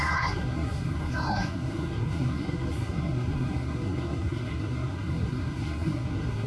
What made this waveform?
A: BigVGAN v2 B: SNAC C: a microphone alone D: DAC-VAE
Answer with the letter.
B